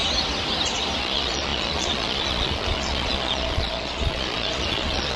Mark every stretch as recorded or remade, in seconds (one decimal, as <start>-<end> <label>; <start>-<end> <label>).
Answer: 0.0-1.0 recorded; 1.0-5.2 remade